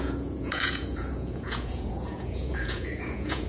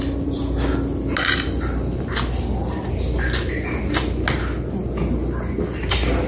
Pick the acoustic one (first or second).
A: second